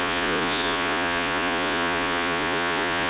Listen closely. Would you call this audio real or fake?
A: fake